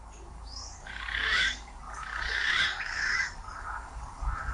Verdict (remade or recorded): remade